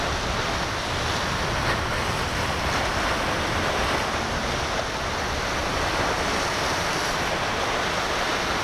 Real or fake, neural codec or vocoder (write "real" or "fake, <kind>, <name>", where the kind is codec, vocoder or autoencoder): real